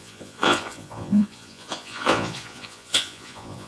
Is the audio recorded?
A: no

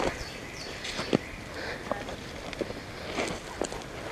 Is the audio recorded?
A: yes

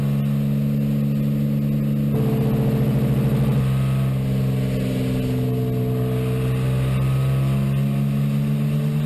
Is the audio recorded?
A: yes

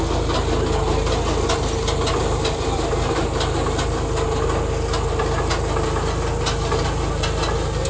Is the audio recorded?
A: yes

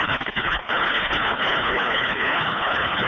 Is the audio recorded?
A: no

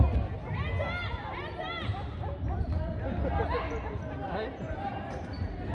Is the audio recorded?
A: yes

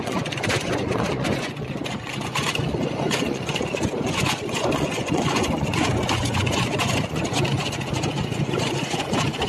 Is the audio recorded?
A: no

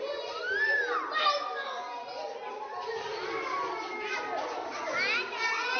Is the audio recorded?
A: yes